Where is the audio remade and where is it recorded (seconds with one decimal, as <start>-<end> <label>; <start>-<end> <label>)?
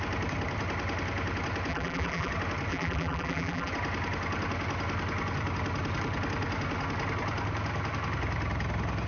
0.0-1.7 recorded; 1.7-2.3 remade; 2.3-2.7 recorded; 2.7-3.7 remade; 3.7-9.1 recorded